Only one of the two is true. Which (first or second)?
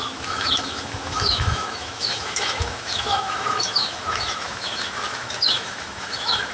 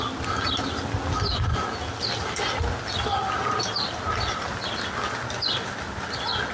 second